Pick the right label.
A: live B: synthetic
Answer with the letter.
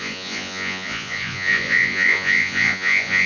B